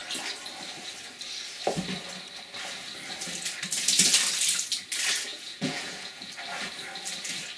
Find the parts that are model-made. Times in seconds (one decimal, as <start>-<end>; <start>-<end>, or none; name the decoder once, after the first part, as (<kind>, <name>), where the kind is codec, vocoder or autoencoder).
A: 5.3-6.3 (vocoder, Vocos)